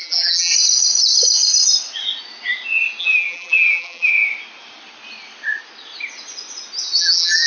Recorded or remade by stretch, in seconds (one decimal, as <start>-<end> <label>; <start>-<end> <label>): 0.0-0.5 remade; 0.5-3.0 recorded; 3.0-4.1 remade; 4.1-7.0 recorded; 7.0-7.5 remade